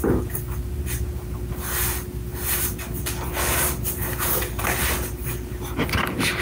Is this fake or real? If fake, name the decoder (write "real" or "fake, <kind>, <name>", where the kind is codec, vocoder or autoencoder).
real